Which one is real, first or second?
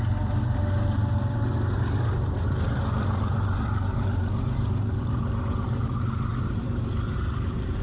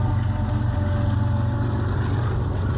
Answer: second